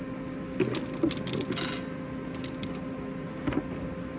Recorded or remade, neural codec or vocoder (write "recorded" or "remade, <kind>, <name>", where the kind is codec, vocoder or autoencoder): recorded